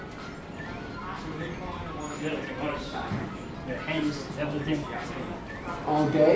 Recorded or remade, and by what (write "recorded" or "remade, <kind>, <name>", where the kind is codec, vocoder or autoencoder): recorded